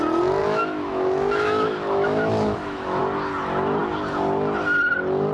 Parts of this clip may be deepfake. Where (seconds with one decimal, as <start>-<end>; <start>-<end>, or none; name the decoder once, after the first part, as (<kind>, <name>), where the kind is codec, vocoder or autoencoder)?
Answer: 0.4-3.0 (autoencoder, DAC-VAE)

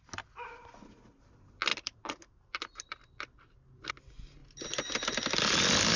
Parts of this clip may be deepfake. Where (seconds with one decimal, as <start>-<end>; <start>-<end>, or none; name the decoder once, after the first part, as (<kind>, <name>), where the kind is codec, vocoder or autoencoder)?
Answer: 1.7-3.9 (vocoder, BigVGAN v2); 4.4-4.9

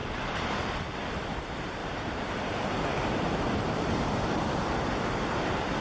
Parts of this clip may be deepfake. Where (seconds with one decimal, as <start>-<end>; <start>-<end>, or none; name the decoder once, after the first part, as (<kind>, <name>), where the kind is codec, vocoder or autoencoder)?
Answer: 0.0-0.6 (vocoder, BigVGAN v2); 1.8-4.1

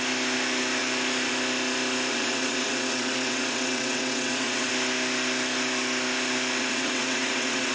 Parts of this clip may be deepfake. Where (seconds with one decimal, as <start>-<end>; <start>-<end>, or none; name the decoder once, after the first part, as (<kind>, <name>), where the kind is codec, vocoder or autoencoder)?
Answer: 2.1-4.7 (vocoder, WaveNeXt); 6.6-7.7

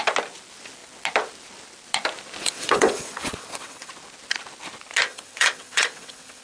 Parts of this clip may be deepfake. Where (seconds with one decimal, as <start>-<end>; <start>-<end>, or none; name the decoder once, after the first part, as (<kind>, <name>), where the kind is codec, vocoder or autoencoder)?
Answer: 2.4-3.9 (vocoder, WaveNeXt); 5.1-6.4

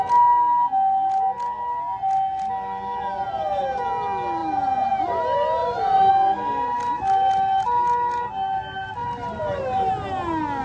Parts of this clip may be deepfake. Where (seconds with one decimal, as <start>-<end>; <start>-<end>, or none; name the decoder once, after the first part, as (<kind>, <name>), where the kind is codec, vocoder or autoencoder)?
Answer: 5.6-6.1 (vocoder, BigVGAN v2); 9.0-9.9

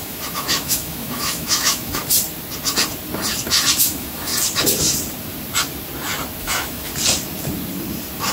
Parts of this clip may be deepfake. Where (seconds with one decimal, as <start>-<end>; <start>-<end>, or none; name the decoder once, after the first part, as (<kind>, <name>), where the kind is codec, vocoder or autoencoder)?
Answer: 0.0-2.0 (autoencoder, DAC-VAE); 3.8-4.3; 6.4-6.9

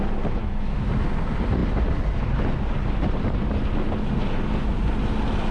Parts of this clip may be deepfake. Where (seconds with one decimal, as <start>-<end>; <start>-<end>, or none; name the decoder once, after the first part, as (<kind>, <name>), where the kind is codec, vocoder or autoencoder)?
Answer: 0.4-0.9 (autoencoder, DAC-VAE)